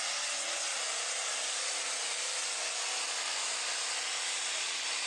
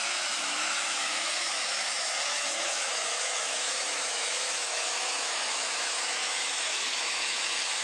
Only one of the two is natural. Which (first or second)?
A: first